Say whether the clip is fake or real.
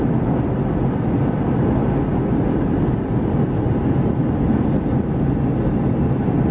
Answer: real